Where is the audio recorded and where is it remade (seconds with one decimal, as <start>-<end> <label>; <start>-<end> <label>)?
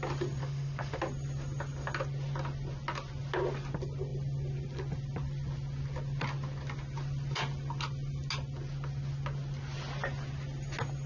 0.0-0.4 recorded; 0.4-1.0 remade; 1.0-11.1 recorded